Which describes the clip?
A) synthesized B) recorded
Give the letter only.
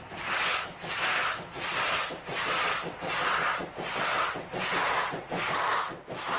B